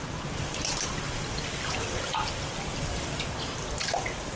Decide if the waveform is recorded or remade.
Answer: recorded